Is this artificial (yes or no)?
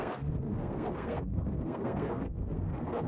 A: yes